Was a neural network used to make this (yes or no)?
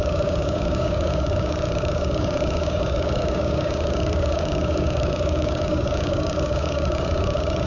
yes